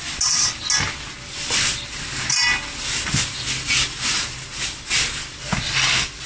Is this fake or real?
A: real